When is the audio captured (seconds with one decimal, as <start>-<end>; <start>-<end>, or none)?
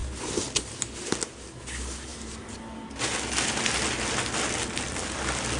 0.0-5.6